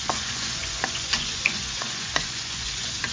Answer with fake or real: fake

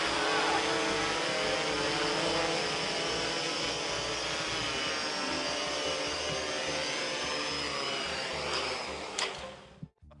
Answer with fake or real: real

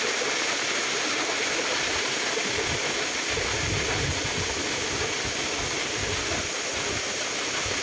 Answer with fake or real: real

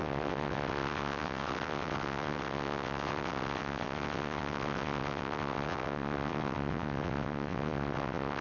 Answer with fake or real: fake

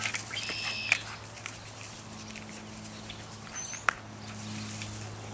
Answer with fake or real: real